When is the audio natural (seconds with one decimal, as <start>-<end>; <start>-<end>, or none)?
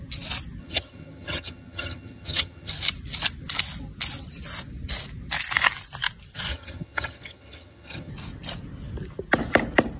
0.0-0.6; 2.7-6.5; 8.1-10.0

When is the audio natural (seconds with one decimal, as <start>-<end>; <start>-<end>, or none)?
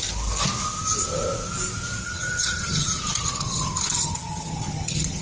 0.0-2.0